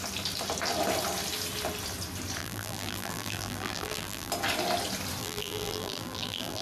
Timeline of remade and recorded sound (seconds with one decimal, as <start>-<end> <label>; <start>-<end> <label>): 0.0-2.4 recorded; 2.4-4.3 remade; 4.3-5.2 recorded; 5.2-6.6 remade